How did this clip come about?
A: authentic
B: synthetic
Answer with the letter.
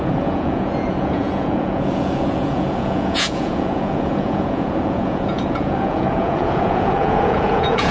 B